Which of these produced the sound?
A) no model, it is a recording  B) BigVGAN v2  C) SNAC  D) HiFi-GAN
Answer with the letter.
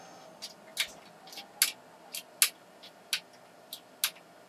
A